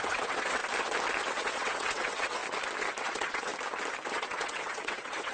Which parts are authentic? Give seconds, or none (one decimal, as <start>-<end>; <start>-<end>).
0.6-1.3; 2.4-3.0; 3.5-4.1